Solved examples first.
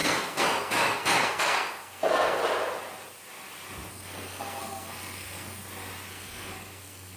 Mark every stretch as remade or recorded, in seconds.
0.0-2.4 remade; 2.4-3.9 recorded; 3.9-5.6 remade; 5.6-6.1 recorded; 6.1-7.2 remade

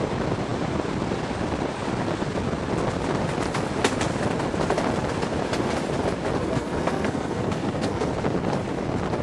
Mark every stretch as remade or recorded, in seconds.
0.0-6.4 recorded; 6.4-8.1 remade; 8.1-9.2 recorded

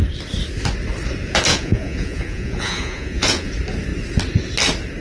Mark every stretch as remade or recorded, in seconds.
0.0-1.5 recorded; 1.5-3.5 remade; 3.5-5.0 recorded

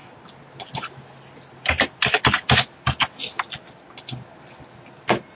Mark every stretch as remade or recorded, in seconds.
0.0-5.3 recorded